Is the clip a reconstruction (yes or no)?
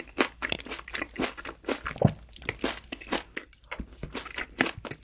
no